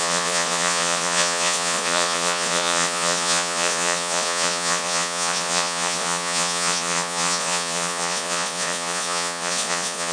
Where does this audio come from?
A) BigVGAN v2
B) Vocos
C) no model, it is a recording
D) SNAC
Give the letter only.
B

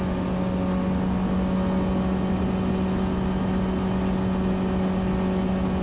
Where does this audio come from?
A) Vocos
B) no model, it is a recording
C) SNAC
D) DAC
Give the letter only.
B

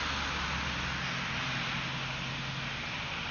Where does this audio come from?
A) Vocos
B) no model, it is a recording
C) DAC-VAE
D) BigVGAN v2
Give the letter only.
B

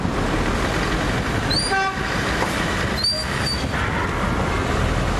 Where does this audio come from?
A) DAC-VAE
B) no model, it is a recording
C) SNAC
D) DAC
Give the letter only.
B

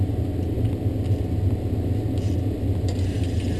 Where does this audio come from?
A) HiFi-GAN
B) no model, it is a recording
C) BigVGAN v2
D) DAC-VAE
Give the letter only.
B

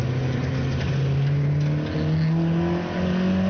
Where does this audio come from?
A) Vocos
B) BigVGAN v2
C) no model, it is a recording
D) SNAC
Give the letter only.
C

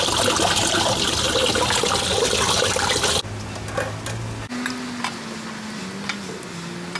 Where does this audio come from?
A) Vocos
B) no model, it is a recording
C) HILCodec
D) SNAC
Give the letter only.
B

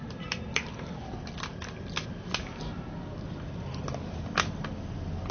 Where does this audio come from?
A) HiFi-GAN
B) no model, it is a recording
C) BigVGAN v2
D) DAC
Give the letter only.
B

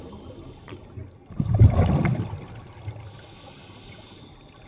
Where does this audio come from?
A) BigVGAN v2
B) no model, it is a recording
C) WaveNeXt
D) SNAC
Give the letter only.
B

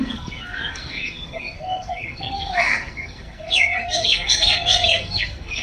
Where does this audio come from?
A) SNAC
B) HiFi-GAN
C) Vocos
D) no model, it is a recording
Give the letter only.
A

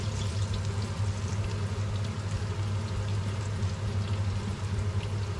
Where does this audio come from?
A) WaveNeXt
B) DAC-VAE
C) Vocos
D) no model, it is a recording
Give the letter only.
D